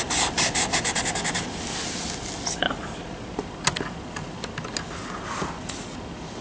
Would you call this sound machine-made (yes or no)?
no